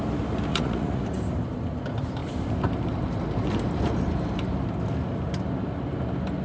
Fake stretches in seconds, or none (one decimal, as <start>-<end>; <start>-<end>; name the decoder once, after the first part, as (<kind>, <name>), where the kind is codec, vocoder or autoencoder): 0.5-1.0 (vocoder, Vocos)